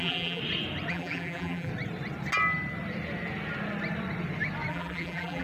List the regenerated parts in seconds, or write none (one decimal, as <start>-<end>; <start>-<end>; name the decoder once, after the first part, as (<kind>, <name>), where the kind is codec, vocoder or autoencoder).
0.0-0.4 (vocoder, BigVGAN v2); 0.9-1.7; 4.7-5.4